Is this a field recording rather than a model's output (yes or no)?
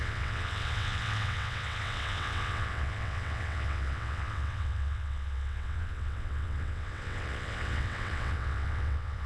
no